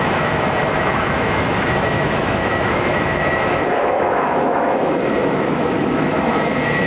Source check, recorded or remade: remade